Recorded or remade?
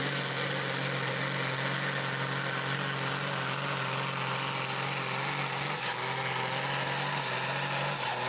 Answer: recorded